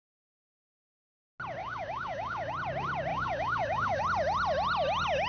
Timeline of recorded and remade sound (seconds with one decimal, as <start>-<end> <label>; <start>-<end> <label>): 0.0-1.6 recorded; 1.6-2.5 remade; 2.5-3.1 recorded; 3.1-4.0 remade; 4.0-5.3 recorded